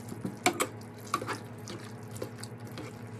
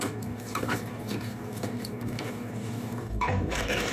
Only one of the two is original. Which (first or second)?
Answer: first